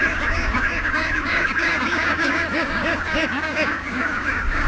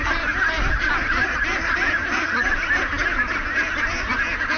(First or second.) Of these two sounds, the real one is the second